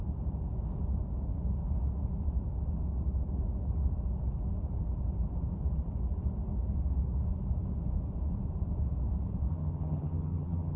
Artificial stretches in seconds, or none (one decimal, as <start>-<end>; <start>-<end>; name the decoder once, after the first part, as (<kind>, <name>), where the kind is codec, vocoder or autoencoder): 9.5-10.8 (vocoder, HiFi-GAN)